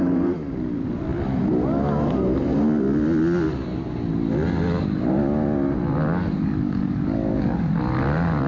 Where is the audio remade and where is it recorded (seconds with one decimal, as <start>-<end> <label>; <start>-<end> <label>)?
0.0-6.4 recorded; 6.4-7.8 remade; 7.8-8.5 recorded